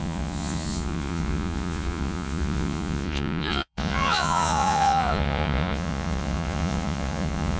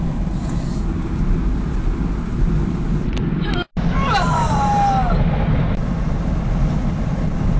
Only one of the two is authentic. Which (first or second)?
second